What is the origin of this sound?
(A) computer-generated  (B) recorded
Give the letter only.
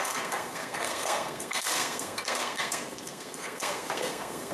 A